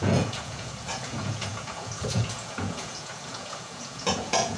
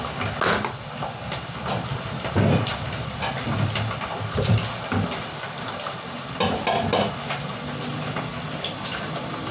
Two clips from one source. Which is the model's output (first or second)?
first